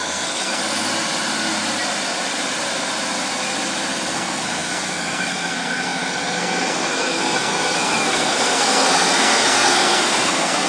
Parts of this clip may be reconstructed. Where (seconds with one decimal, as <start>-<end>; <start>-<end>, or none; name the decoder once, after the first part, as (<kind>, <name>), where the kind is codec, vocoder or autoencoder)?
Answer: 0.0-0.6 (codec, SNAC); 3.9-10.7